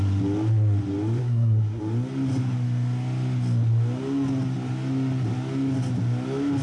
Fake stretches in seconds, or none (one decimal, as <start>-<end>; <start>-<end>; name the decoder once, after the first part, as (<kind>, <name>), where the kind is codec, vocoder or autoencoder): 1.2-1.8 (codec, SNAC)